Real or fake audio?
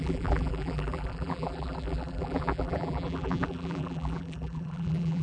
fake